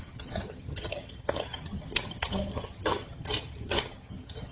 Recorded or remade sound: remade